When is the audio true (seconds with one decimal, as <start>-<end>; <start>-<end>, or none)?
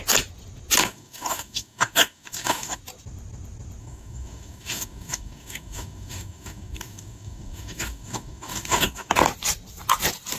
0.0-0.8; 2.8-3.8; 9.1-10.4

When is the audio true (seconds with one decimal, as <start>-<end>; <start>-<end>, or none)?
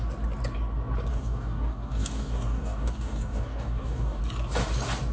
0.0-1.1; 4.2-5.1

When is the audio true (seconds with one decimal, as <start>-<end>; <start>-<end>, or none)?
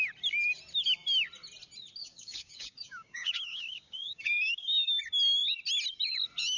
0.0-2.0; 5.0-6.6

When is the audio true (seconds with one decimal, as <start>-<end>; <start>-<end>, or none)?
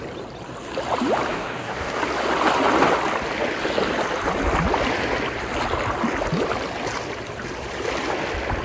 0.0-1.3; 2.0-8.6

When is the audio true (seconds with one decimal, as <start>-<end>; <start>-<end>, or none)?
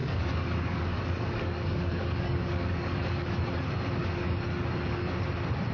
3.4-4.0; 5.1-5.7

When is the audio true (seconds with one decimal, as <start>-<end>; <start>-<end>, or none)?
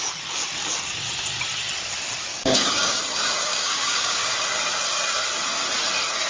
0.0-2.3; 3.0-3.5; 4.3-6.3